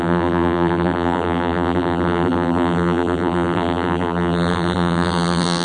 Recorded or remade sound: remade